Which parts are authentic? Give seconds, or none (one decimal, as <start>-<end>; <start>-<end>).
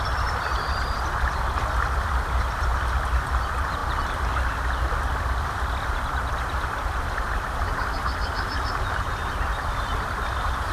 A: 2.7-3.4